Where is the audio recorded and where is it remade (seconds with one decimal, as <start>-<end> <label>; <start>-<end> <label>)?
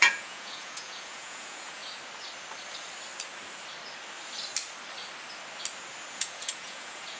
0.0-1.8 remade; 1.8-6.1 recorded; 6.1-7.2 remade